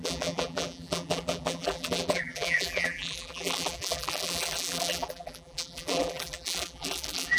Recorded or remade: remade